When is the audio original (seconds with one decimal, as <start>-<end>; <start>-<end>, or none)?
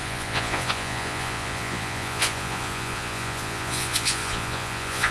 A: none